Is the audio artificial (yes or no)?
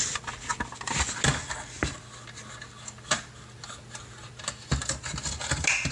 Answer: no